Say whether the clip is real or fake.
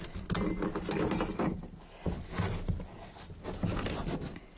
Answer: real